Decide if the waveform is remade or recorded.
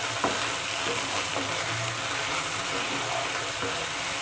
recorded